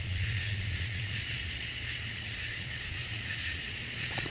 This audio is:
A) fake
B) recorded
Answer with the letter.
A